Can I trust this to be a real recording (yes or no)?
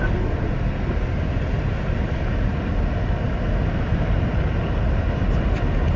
yes